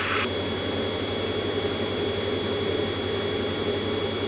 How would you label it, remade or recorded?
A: recorded